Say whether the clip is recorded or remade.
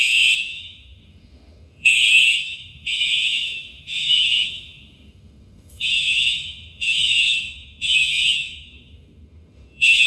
remade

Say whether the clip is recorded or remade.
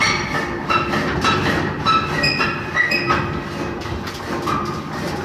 recorded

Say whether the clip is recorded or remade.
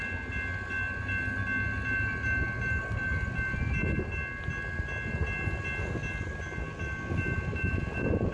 recorded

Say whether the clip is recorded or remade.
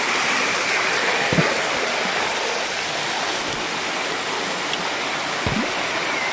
recorded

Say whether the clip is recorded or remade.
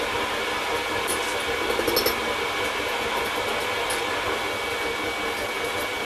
recorded